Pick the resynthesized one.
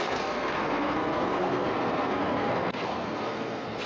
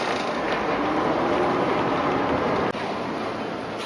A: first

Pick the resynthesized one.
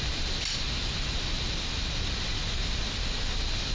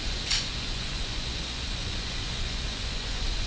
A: second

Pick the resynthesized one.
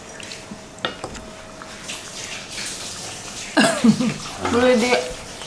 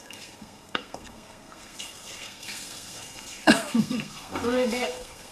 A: second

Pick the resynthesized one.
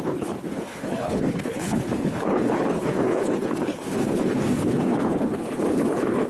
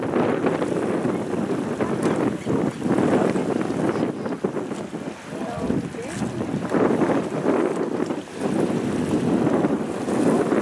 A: first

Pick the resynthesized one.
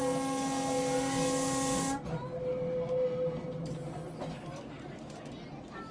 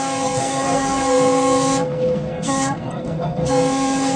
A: second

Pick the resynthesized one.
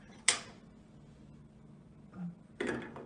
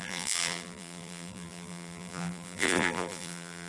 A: second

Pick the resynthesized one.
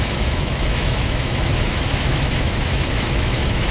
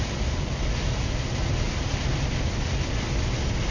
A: first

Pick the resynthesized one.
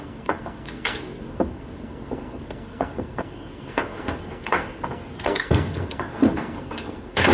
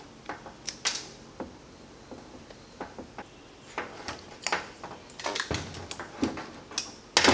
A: first